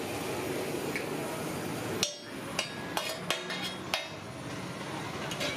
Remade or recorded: recorded